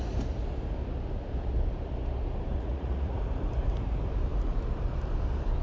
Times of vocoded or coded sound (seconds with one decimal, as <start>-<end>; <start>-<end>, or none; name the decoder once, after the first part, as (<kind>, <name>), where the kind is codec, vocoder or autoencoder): 2.5-3.2 (vocoder, Vocos)